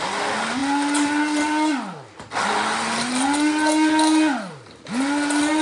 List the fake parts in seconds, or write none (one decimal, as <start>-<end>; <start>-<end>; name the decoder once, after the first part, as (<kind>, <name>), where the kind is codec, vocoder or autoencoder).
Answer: none